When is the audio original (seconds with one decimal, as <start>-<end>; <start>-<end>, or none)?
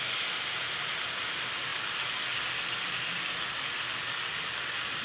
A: 0.0-5.0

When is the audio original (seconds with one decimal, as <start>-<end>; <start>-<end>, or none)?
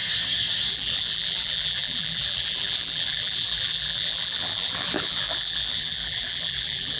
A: 0.0-0.7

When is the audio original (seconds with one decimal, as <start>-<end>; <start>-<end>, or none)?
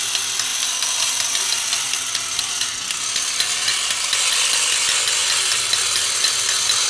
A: 0.0-6.9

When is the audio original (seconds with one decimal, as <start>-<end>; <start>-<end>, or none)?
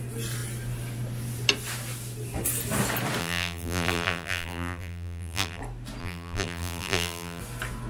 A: 0.0-3.2; 5.6-6.0; 7.4-7.9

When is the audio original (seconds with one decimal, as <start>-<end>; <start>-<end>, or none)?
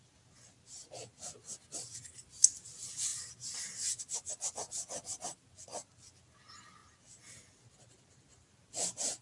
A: 0.0-9.2